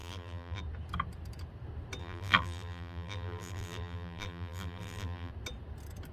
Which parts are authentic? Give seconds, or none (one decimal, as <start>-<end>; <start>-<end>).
0.6-2.0; 5.3-6.1